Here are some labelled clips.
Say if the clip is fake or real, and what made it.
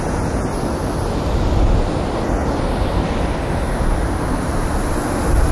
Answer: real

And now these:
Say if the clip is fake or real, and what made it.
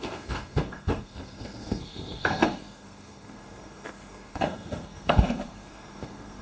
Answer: fake, codec, SNAC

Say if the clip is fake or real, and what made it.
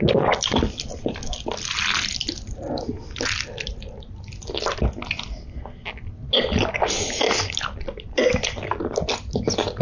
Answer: real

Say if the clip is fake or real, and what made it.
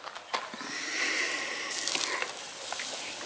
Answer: real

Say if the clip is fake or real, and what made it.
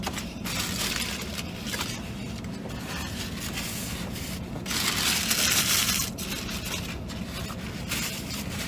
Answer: real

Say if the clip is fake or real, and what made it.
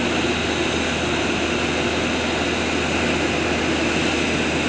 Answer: real